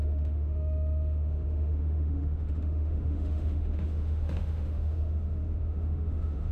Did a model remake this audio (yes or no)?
yes